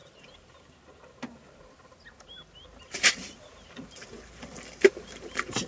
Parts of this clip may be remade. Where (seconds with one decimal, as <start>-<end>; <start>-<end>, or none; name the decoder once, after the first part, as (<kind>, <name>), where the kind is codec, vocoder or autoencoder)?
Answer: none